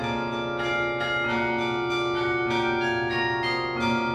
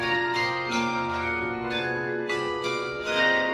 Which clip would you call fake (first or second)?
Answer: second